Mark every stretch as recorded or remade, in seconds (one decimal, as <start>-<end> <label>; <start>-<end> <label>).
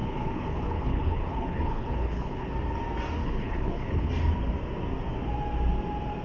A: 0.0-2.5 remade; 2.5-3.2 recorded; 3.2-4.1 remade; 4.1-6.2 recorded